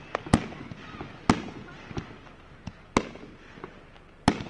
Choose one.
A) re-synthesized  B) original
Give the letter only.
B